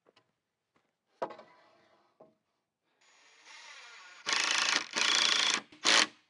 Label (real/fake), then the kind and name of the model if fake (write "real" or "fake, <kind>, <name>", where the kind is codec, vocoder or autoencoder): real